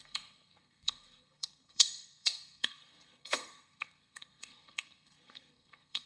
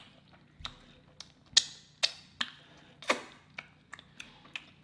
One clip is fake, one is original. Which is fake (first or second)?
first